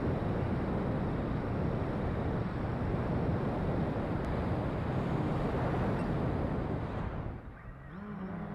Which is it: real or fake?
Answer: real